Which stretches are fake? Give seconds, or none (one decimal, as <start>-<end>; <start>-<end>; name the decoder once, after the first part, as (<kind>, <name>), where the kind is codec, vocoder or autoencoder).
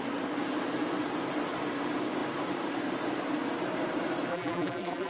4.3-5.1 (vocoder, BigVGAN v2)